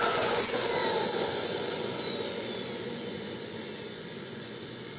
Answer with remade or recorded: remade